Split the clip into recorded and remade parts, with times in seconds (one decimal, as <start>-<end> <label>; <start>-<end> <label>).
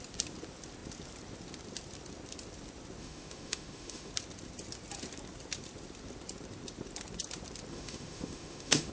0.0-3.0 recorded; 3.0-4.1 remade; 4.1-7.7 recorded; 7.7-8.9 remade